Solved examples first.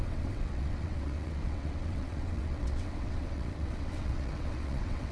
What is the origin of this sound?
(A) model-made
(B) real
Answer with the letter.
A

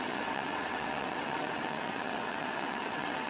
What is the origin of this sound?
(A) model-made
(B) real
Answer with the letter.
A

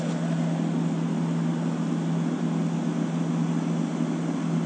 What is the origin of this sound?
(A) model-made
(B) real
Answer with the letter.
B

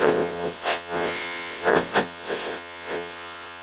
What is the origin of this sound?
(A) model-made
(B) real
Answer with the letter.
A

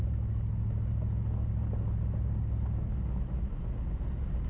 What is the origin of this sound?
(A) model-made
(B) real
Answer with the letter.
B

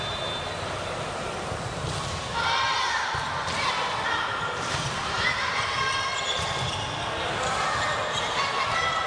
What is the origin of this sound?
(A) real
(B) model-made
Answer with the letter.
A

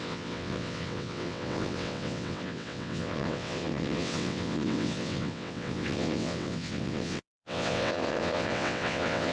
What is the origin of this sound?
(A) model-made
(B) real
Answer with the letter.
A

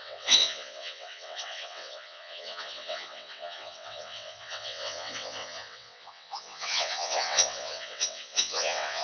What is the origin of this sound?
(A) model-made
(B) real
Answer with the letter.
A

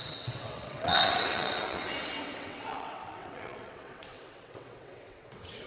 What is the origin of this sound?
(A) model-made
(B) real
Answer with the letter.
A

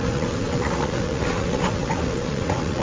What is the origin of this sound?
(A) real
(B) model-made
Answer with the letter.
B